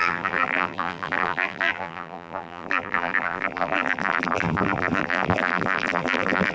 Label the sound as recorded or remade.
remade